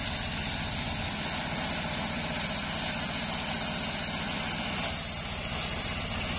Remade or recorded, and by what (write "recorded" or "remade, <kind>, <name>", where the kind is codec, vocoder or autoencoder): recorded